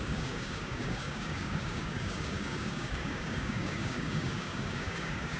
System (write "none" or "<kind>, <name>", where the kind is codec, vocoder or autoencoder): codec, DAC